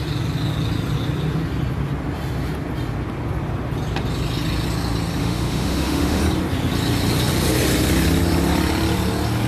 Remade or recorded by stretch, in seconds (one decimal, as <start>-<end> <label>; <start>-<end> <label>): 0.0-5.2 recorded; 5.2-6.2 remade; 6.2-9.5 recorded